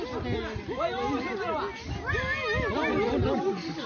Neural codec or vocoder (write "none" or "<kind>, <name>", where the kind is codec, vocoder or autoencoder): none